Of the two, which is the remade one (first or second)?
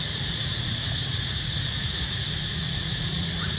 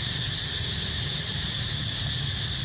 first